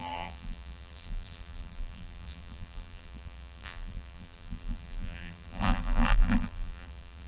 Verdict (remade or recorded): remade